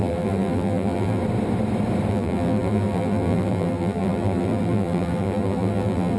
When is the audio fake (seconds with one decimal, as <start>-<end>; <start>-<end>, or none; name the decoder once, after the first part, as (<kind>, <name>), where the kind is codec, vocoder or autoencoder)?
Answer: 0.0-1.2 (vocoder, BigVGAN v2); 2.1-6.2